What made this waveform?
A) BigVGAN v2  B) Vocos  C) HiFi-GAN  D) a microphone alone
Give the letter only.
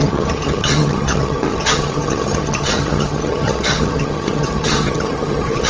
C